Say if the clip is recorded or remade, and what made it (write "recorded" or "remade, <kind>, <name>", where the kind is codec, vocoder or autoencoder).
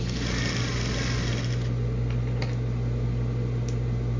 recorded